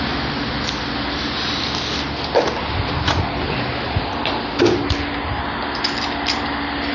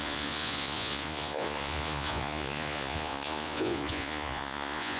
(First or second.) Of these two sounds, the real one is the first